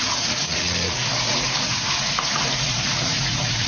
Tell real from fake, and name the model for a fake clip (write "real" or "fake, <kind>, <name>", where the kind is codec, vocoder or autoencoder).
fake, vocoder, Vocos